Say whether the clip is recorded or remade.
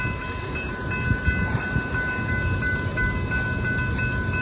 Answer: recorded